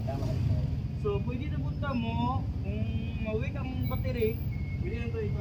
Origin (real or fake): real